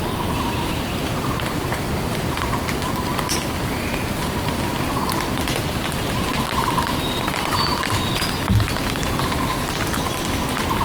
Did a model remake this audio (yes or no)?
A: yes